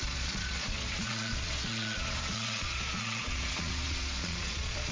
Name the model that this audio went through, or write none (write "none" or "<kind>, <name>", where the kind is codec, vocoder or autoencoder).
vocoder, Vocos